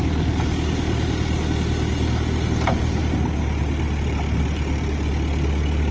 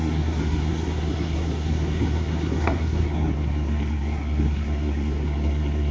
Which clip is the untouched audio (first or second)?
first